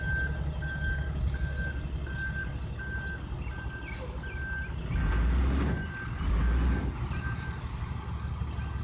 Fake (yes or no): no